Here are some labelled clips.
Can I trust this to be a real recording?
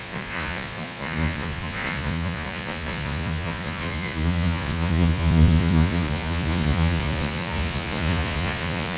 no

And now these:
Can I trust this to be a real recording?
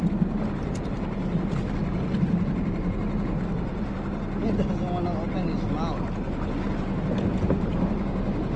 yes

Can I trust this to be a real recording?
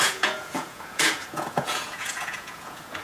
no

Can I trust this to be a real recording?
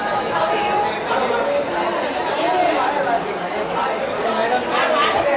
yes